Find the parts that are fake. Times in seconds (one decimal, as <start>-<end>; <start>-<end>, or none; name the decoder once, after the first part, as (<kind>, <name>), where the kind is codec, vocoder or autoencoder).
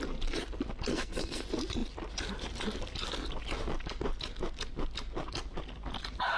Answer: 0.9-1.4 (codec, SNAC)